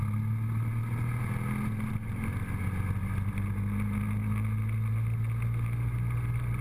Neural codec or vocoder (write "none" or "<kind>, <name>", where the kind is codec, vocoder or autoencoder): none